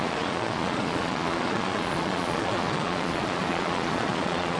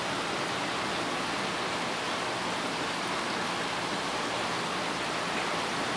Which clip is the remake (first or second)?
first